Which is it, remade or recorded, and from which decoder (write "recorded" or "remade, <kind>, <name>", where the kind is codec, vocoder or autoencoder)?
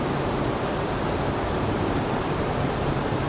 remade, vocoder, BigVGAN v2